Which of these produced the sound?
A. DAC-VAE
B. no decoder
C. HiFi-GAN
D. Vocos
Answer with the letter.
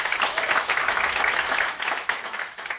A